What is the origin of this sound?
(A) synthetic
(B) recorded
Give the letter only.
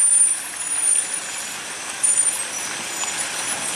B